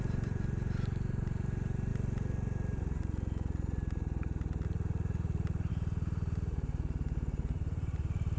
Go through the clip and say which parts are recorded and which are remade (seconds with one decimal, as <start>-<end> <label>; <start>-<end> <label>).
0.0-1.9 remade; 1.9-5.7 recorded; 5.7-8.4 remade